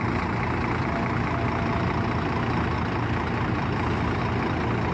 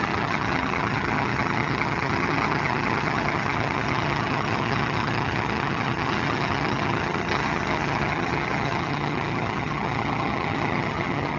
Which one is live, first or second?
first